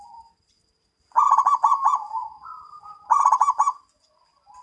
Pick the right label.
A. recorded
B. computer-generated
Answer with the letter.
A